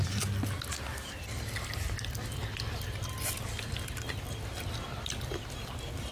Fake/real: real